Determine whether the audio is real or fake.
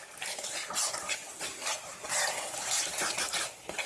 real